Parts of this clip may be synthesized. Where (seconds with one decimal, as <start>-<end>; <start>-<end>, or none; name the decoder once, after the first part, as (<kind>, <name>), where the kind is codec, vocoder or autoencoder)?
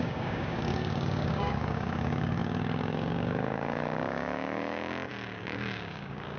0.0-6.4 (codec, DAC)